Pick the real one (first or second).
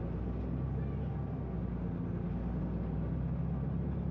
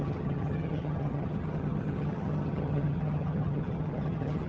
first